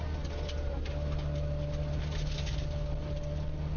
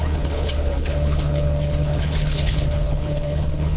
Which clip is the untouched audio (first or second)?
first